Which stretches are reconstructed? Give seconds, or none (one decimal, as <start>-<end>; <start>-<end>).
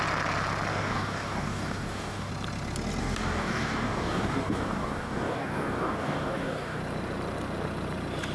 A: 0.7-2.3; 3.0-6.8